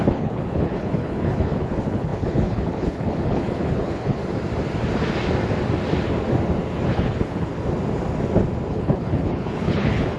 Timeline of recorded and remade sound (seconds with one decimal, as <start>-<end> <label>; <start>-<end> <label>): 0.0-4.2 remade; 4.2-6.9 recorded; 6.9-7.5 remade; 7.5-8.7 recorded; 8.7-10.2 remade